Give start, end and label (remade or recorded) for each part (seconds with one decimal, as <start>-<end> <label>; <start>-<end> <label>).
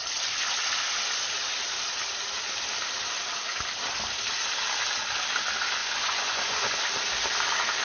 0.0-5.8 recorded; 5.8-6.8 remade; 6.8-7.8 recorded